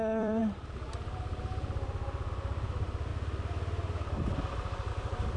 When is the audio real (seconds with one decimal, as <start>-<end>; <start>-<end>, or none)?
0.4-2.3; 3.1-4.9